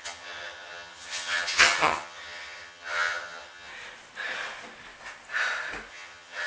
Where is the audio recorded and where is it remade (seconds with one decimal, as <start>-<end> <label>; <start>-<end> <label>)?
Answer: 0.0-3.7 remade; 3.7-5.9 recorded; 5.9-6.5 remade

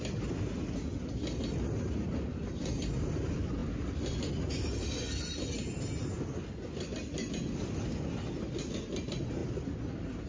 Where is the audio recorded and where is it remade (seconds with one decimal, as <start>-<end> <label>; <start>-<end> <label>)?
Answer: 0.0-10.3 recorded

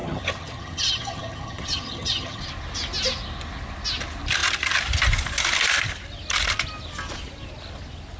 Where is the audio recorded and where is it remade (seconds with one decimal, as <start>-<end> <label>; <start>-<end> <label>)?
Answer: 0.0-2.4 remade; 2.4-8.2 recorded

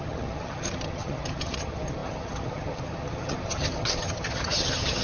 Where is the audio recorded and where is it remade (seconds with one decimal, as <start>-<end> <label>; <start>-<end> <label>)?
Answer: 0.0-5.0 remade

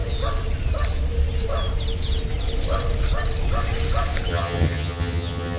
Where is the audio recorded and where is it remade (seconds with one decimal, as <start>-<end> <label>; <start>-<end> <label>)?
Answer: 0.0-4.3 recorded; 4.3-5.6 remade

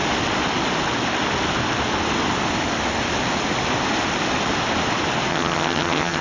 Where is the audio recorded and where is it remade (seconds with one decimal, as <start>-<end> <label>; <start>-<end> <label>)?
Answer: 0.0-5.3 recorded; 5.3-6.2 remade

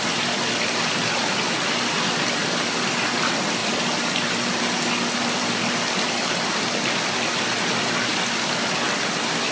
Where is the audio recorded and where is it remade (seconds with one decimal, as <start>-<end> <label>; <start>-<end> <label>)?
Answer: 0.0-9.5 recorded

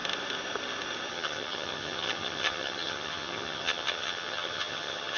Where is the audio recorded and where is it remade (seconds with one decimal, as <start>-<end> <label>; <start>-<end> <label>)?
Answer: 0.0-1.1 recorded; 1.1-5.2 remade